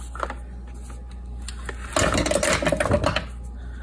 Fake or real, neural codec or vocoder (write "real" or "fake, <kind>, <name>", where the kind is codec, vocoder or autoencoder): real